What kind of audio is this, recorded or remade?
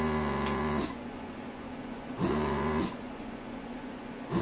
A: remade